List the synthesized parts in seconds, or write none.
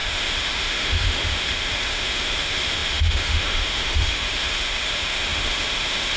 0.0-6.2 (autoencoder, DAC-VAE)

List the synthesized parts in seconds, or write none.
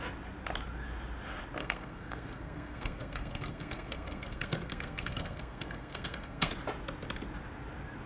1.6-6.5 (codec, SNAC)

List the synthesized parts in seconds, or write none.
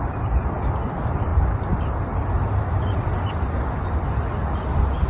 none